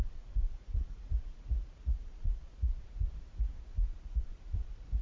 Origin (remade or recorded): remade